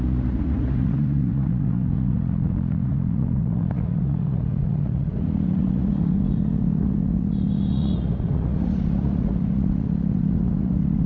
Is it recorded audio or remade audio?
remade